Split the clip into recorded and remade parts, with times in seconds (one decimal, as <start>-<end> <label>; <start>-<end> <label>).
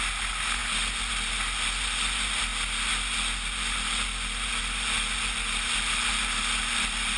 0.0-7.2 recorded